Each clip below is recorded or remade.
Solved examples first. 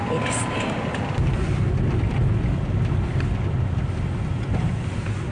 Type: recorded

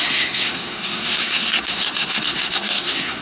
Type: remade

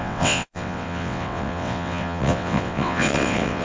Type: remade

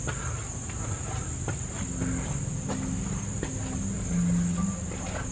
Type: recorded